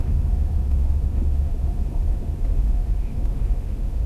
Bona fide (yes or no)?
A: no